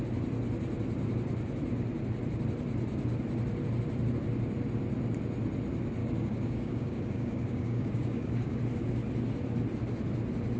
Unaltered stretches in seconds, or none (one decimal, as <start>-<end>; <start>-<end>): 0.0-6.0; 8.6-10.6